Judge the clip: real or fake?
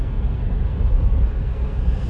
fake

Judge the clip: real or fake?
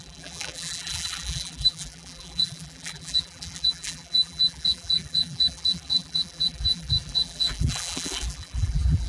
fake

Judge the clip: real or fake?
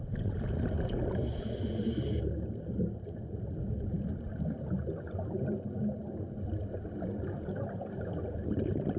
real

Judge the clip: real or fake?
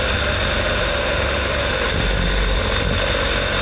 real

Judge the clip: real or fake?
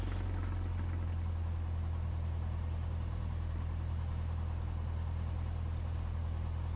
real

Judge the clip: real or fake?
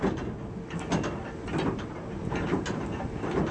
real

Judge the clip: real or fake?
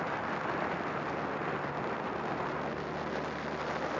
real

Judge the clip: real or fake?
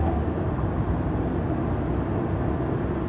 real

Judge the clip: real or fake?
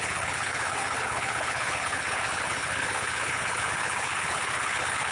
fake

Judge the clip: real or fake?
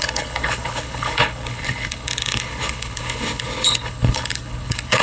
fake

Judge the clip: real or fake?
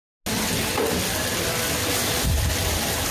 real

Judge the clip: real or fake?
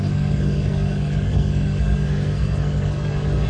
fake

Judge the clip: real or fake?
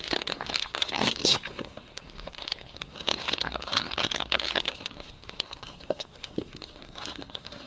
fake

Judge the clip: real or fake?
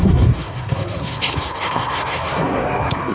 fake